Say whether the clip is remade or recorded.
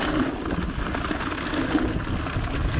recorded